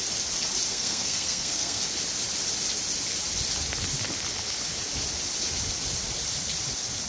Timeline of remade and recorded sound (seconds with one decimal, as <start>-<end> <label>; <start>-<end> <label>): 0.0-0.7 recorded; 0.7-1.8 remade; 1.8-7.1 recorded